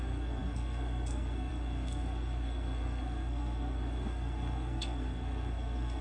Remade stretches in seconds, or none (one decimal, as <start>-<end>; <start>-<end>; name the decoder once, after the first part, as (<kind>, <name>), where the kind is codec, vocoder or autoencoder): 0.0-6.0 (codec, SNAC)